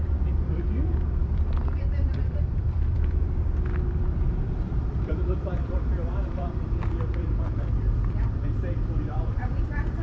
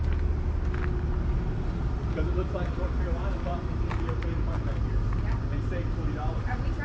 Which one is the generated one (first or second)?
first